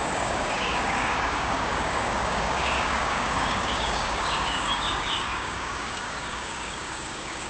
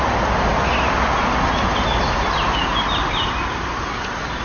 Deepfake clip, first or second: first